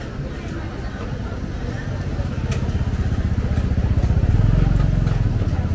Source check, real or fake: real